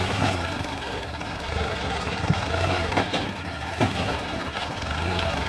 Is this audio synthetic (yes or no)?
yes